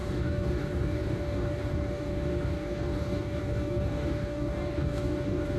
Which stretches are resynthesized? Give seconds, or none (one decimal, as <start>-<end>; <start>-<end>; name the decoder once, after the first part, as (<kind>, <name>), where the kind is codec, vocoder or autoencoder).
0.0-5.6 (codec, DAC)